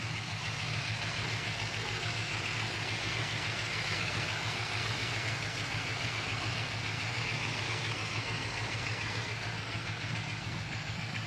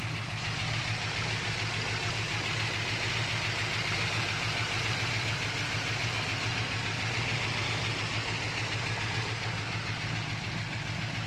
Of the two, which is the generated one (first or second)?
first